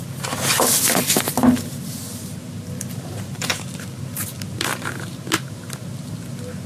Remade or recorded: recorded